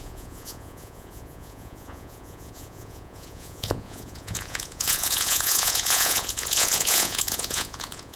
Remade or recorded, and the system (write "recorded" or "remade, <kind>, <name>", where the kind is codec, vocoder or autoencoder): remade, vocoder, Vocos